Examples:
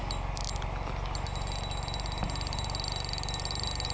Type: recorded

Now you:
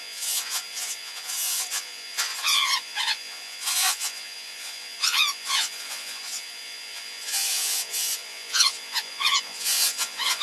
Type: remade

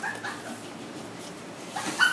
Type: recorded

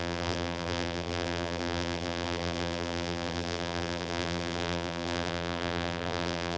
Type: remade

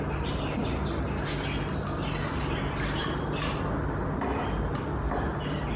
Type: recorded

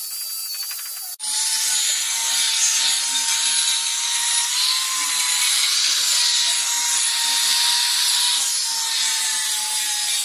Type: recorded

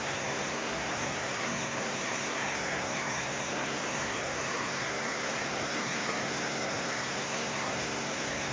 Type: remade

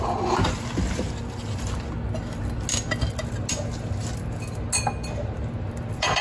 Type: recorded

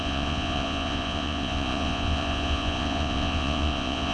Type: remade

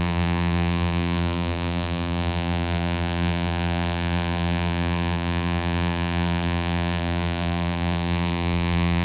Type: remade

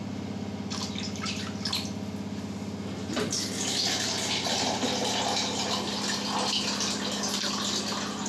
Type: recorded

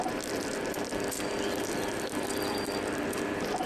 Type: recorded